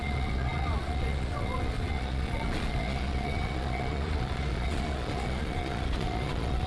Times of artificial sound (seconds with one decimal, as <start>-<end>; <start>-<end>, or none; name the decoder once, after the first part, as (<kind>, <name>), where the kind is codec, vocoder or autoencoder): 0.0-6.7 (vocoder, Vocos)